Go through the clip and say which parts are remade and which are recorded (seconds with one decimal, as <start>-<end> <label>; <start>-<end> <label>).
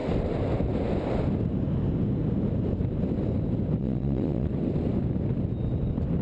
0.0-3.8 recorded; 3.8-4.5 remade; 4.5-6.2 recorded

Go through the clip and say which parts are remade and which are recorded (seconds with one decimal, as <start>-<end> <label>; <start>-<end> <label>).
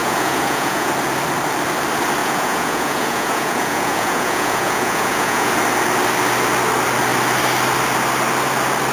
0.0-0.9 remade; 0.9-2.2 recorded; 2.2-5.5 remade; 5.5-8.9 recorded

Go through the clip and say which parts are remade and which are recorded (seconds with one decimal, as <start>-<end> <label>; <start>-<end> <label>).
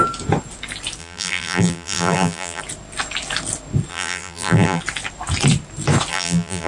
0.0-1.0 recorded; 1.0-2.6 remade; 2.6-3.9 recorded; 3.9-4.8 remade; 4.8-6.1 recorded; 6.1-6.7 remade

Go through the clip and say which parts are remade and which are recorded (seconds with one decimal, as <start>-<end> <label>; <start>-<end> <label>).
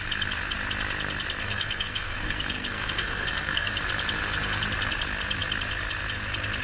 0.0-1.4 recorded; 1.4-3.8 remade; 3.8-6.6 recorded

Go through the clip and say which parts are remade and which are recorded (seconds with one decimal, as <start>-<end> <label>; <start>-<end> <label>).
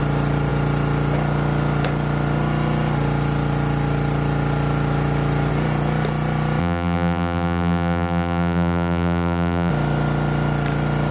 0.0-6.6 recorded; 6.6-9.7 remade; 9.7-11.1 recorded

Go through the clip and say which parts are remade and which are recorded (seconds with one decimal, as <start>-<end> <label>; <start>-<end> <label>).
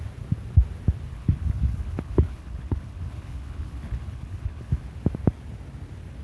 0.0-1.1 recorded; 1.1-4.8 remade; 4.8-6.2 recorded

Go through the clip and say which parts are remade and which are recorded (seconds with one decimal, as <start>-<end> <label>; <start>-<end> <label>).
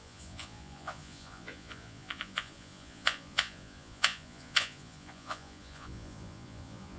0.0-7.0 remade